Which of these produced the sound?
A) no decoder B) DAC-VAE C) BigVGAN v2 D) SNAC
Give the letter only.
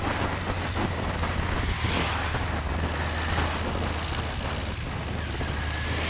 A